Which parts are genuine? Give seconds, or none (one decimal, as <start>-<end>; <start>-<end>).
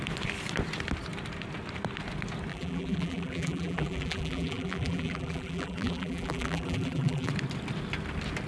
0.0-2.5; 7.3-8.5